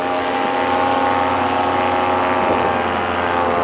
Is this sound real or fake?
real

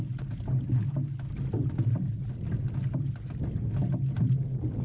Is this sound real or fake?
real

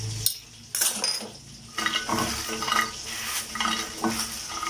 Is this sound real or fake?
real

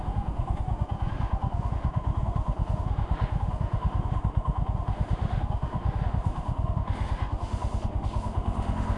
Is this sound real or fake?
fake